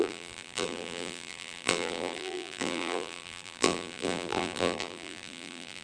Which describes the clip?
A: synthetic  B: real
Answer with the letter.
A